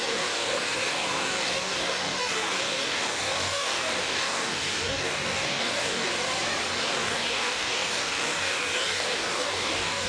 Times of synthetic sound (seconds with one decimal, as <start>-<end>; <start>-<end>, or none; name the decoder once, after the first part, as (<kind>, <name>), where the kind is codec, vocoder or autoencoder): 0.0-6.1 (codec, DAC); 6.7-10.1